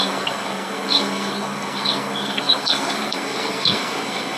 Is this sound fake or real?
fake